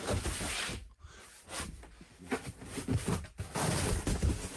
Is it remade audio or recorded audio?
recorded